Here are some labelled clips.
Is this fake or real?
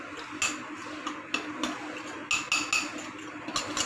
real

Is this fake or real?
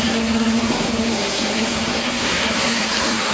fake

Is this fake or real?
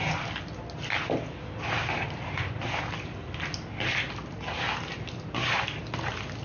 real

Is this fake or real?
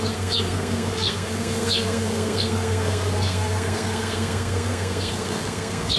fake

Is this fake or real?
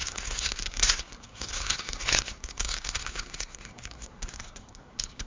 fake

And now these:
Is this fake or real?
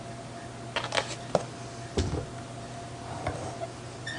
real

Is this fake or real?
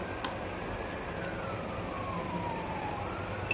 real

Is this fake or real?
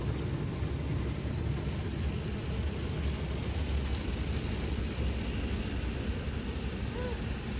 real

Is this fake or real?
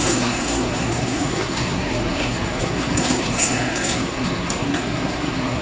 fake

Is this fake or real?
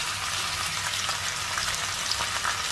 real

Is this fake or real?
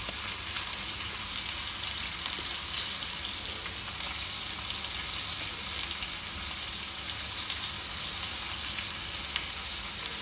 real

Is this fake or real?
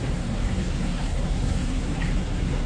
fake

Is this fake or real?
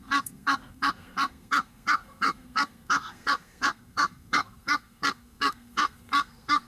fake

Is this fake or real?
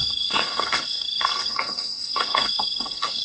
fake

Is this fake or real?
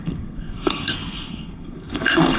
fake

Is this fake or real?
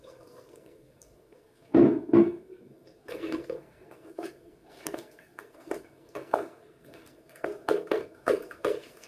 fake